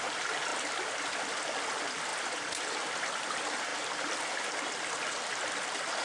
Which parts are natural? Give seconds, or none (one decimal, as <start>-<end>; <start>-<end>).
0.0-6.0